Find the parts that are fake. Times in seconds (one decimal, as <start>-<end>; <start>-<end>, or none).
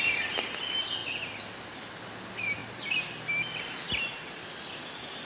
none